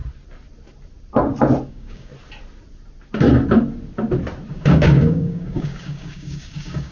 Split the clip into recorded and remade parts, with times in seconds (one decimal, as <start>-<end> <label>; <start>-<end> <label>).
0.0-1.7 recorded; 1.7-2.1 remade; 2.1-4.5 recorded; 4.5-6.9 remade